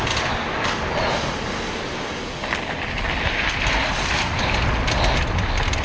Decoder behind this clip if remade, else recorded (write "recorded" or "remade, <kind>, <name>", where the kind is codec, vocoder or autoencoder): recorded